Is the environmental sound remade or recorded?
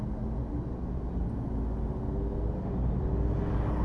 recorded